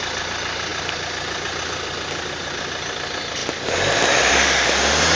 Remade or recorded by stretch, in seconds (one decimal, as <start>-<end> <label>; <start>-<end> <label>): 0.0-5.2 recorded